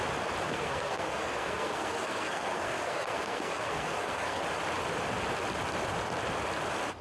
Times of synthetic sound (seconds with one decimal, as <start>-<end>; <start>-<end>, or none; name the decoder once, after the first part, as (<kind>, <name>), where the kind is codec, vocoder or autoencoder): 0.5-4.4 (codec, SNAC)